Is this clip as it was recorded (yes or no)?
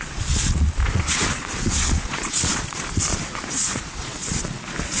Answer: no